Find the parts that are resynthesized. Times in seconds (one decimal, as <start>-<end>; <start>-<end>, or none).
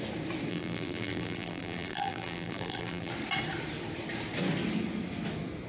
0.5-3.1